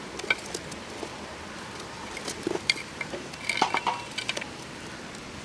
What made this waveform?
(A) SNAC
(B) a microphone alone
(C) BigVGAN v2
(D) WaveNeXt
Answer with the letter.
B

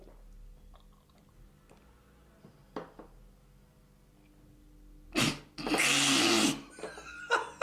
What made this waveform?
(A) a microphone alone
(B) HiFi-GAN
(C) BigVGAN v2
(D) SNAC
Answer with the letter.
A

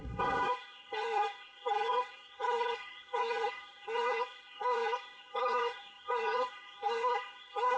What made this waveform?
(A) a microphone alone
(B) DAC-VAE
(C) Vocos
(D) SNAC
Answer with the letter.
D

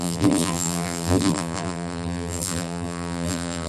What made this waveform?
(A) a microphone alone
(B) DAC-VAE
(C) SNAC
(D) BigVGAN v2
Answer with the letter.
D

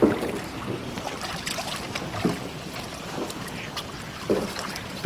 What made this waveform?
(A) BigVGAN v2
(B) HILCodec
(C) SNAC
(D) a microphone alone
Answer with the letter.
D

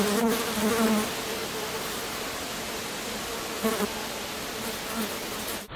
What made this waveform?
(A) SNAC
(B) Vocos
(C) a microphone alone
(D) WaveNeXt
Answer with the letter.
C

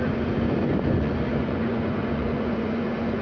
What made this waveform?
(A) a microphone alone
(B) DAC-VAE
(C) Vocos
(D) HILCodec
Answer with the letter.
C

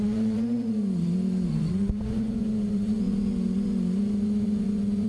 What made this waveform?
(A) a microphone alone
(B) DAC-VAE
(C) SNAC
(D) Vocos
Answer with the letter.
D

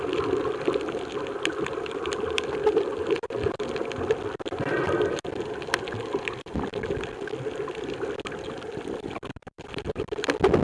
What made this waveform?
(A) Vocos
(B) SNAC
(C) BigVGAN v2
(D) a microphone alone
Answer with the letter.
D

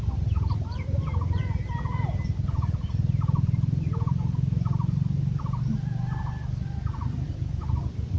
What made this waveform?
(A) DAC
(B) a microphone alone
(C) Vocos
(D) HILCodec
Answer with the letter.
B